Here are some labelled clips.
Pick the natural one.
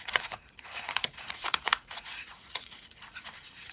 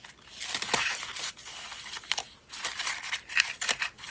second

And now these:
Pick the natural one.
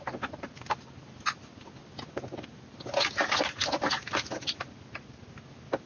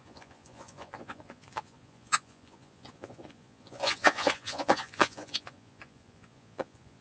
first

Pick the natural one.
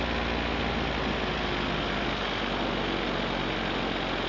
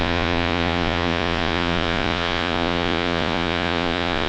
first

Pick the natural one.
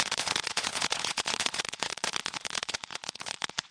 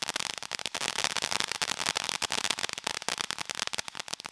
second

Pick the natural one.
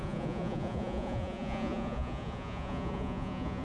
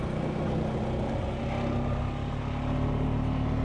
second